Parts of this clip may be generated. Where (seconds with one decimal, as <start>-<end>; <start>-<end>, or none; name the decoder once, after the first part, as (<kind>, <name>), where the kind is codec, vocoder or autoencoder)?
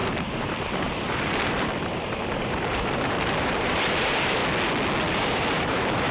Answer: 0.0-4.4 (vocoder, BigVGAN v2); 5.1-6.1